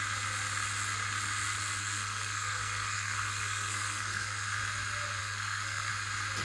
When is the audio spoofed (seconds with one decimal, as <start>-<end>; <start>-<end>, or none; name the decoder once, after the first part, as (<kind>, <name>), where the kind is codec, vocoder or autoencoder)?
1.8-4.6 (codec, SNAC); 5.2-5.9